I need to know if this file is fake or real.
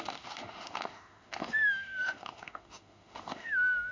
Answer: fake